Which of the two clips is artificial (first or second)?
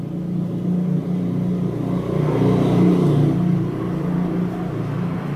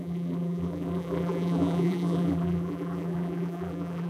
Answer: second